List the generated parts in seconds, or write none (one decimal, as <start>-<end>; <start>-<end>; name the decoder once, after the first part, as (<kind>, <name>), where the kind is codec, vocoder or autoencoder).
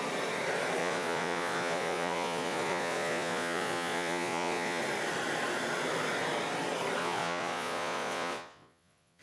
0.8-4.8 (vocoder, Vocos); 7.0-9.2